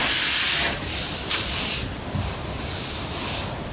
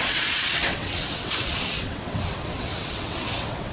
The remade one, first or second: second